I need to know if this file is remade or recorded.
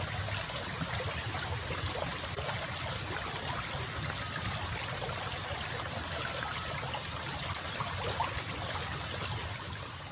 recorded